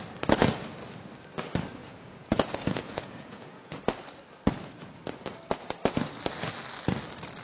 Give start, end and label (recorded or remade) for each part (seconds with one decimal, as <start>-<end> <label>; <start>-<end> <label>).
0.0-1.8 recorded; 1.8-3.8 remade; 3.8-7.4 recorded